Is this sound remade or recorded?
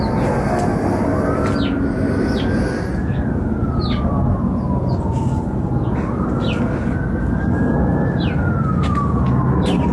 recorded